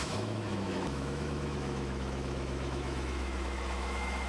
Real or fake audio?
fake